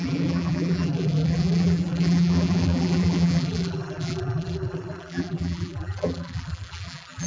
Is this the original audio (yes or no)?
no